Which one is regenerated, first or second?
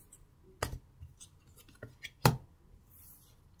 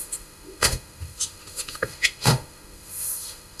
second